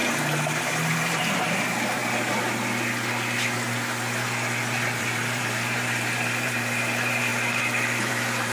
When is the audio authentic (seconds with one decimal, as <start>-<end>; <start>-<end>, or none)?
0.0-0.6; 2.0-5.0; 7.3-8.1